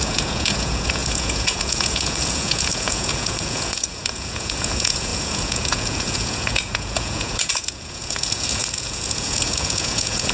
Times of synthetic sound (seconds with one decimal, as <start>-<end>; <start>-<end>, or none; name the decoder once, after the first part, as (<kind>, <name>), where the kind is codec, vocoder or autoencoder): 0.0-10.3 (vocoder, Vocos)